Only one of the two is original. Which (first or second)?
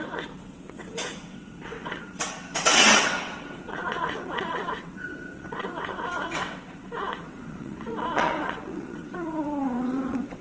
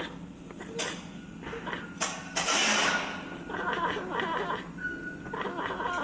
second